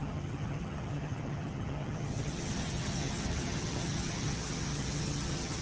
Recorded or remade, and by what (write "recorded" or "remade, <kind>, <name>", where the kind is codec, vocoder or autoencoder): remade, vocoder, HiFi-GAN